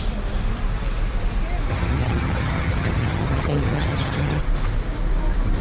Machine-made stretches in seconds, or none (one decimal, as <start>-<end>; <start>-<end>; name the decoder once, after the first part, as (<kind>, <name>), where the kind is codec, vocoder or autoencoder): 1.7-4.4 (vocoder, HiFi-GAN)